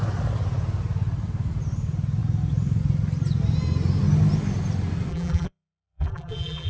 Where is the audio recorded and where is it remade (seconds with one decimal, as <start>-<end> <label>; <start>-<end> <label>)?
0.0-5.1 recorded; 5.1-6.7 remade